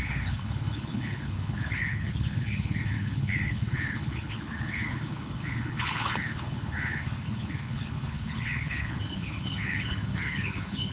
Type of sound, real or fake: fake